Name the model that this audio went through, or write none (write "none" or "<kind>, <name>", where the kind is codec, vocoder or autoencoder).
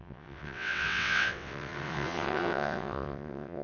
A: vocoder, WaveNeXt